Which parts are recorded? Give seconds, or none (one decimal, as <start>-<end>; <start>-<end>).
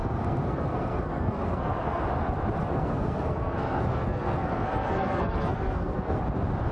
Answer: 2.0-2.6; 6.2-6.7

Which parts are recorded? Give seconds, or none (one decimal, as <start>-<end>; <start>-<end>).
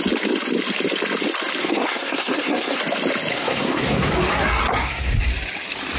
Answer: 0.0-1.6; 2.8-3.3; 4.1-4.7; 5.3-6.0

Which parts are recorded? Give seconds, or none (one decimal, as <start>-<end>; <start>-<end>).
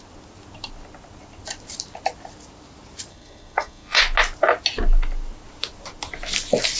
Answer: 0.0-3.1; 4.0-6.8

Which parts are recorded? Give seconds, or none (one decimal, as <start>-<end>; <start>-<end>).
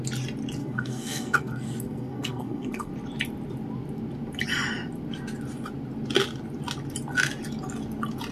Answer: 0.0-0.6; 2.9-8.3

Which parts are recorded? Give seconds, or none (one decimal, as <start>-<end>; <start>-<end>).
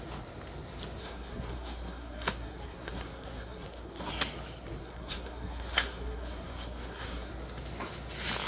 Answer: 0.0-1.0; 4.1-4.8; 7.3-8.5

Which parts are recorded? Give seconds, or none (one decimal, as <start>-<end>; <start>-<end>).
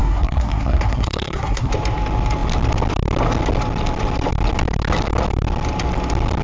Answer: 1.7-6.4